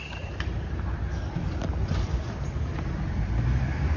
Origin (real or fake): fake